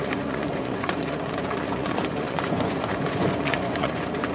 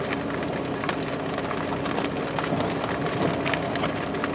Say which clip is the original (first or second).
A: second